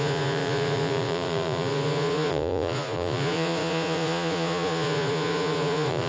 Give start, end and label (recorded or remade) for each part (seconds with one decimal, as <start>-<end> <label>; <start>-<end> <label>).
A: 0.0-6.1 remade